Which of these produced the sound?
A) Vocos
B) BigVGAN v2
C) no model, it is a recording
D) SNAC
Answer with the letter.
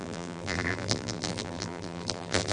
B